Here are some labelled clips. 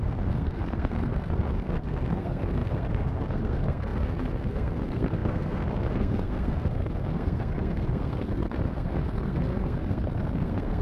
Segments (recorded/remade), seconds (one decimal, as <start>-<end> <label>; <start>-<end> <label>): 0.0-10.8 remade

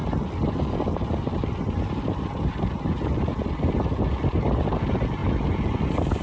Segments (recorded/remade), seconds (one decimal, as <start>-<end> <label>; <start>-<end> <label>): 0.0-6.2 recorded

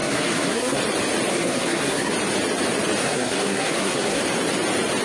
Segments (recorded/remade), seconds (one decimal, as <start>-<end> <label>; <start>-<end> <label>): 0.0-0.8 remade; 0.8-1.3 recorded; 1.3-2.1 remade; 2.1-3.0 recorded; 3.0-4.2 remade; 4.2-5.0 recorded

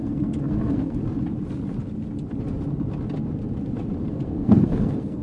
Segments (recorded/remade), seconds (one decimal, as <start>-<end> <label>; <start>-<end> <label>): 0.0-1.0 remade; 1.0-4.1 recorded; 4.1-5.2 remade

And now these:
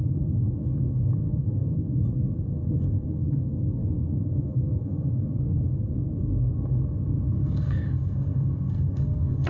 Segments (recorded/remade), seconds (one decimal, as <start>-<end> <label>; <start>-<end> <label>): 0.0-9.5 remade

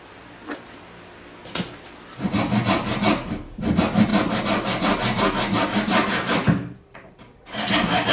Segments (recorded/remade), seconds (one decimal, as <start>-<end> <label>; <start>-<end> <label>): 0.0-8.1 recorded

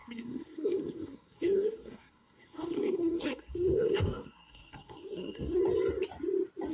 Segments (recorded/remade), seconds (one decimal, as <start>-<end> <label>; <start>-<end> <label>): 0.0-5.6 remade; 5.6-6.7 recorded